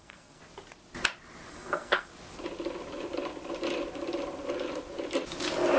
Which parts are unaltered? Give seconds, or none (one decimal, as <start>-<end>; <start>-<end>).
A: 0.4-1.5; 2.1-5.8